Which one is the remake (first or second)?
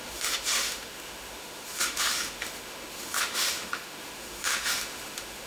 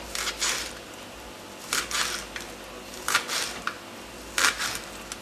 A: first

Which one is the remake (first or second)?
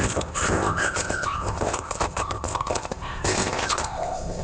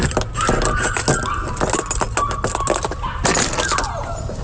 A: first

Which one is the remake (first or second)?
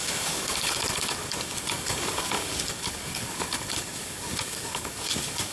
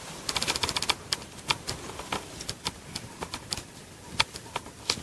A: first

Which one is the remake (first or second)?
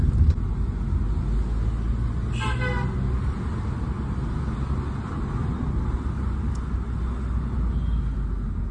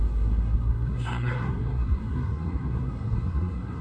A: second